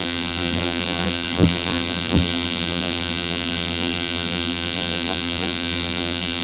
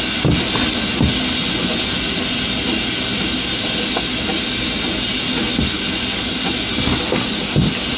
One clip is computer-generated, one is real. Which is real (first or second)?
second